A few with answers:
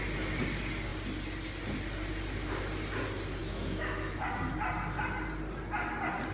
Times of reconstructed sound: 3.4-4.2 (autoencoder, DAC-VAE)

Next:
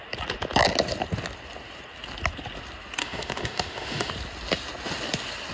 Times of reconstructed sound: 3.0-4.1 (autoencoder, DAC-VAE)

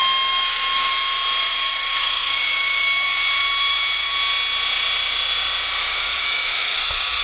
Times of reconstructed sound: 0.0-0.9 (autoencoder, DAC-VAE); 1.5-4.1; 5.8-7.2

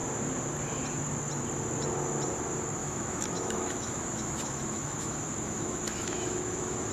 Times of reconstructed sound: 2.8-6.9 (autoencoder, DAC-VAE)